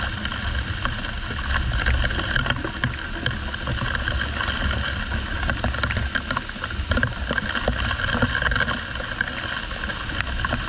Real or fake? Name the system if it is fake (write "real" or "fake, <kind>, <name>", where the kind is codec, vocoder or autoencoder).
real